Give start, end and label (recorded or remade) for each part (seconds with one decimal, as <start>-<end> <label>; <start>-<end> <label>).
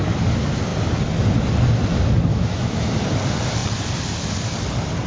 0.0-2.3 recorded; 2.3-2.9 remade; 2.9-5.1 recorded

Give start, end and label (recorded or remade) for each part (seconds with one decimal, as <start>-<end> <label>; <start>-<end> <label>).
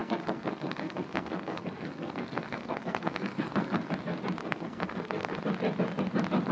0.0-3.9 remade; 3.9-4.4 recorded; 4.4-5.4 remade; 5.4-6.5 recorded